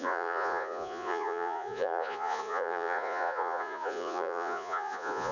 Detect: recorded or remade remade